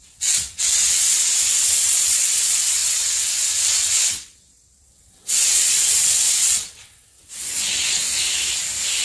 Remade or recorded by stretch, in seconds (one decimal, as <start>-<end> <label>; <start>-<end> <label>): 0.0-8.0 remade; 8.0-9.0 recorded